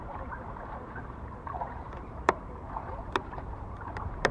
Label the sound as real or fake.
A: fake